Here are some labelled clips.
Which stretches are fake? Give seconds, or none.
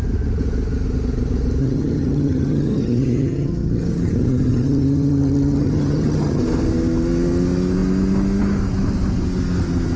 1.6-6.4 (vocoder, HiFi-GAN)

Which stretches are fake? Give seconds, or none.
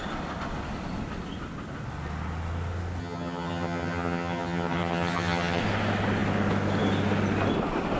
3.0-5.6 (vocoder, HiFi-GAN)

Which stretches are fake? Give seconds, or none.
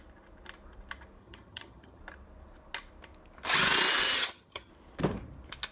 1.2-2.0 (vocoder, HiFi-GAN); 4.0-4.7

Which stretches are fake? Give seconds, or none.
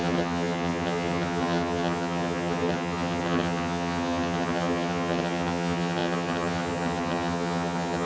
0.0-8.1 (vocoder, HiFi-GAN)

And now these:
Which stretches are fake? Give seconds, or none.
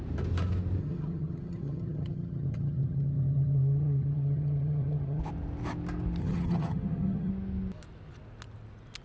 0.8-5.2 (vocoder, HiFi-GAN); 6.2-7.3